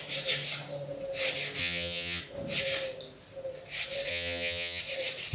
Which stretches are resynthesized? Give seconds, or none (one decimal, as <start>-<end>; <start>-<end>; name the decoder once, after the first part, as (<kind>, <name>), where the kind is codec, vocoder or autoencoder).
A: 1.6-2.2 (vocoder, HiFi-GAN); 4.1-4.8